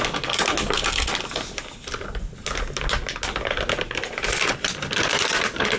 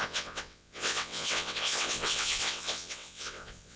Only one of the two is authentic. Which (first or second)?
first